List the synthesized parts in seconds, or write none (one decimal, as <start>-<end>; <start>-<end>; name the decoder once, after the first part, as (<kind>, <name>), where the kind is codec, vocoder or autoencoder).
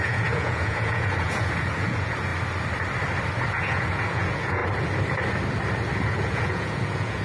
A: 0.0-2.3 (vocoder, Vocos); 3.6-4.6; 6.0-7.2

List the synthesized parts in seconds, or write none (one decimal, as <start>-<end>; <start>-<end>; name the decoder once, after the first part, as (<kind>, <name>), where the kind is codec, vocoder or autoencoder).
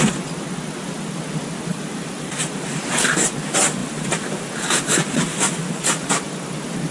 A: 1.7-2.9 (vocoder, BigVGAN v2); 3.8-4.5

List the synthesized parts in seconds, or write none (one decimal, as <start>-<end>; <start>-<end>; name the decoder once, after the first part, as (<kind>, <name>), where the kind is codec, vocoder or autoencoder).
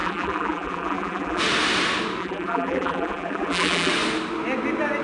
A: 0.0-1.4 (vocoder, BigVGAN v2); 2.2-3.9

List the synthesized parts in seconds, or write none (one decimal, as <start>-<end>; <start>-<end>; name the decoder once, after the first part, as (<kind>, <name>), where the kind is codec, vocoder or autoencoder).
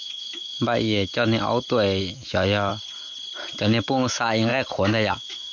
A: 0.0-1.1 (autoencoder, DAC-VAE); 2.0-2.7; 3.5-4.5; 5.1-5.5